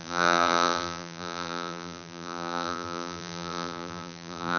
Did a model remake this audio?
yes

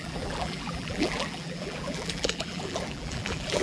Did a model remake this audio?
yes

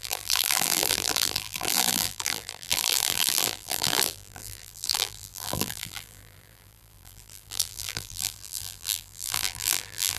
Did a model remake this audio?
yes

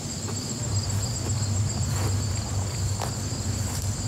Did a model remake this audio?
no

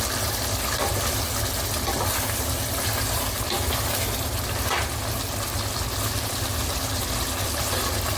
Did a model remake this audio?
no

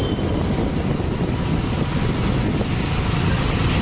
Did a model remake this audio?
no